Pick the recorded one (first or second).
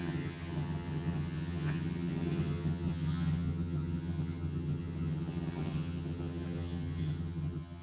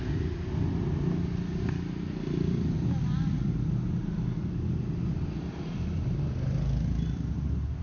second